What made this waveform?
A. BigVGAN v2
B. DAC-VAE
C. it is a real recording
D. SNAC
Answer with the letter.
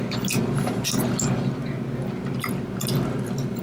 C